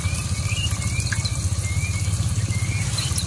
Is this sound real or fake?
real